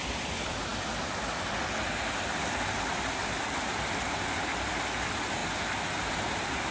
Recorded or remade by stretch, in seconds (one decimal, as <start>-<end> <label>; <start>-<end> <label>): 0.0-0.7 remade; 0.7-2.9 recorded; 2.9-5.4 remade; 5.4-6.1 recorded; 6.1-6.7 remade